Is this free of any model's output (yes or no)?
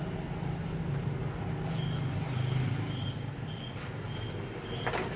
yes